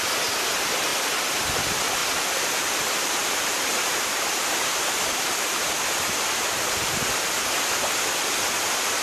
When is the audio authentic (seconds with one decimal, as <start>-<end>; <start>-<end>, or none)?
0.0-3.2; 5.5-9.0